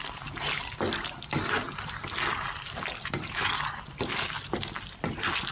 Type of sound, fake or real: real